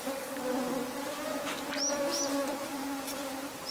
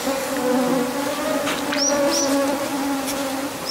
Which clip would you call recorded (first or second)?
second